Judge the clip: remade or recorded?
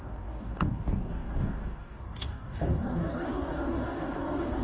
remade